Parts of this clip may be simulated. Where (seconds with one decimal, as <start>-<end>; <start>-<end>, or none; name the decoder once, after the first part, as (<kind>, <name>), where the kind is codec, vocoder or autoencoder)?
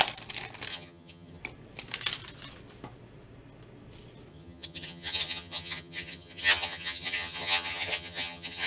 0.7-1.4 (vocoder, HiFi-GAN); 4.3-8.7